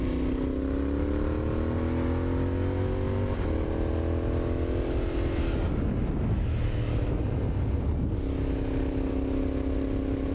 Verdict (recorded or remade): recorded